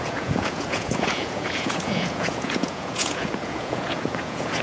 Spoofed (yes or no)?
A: yes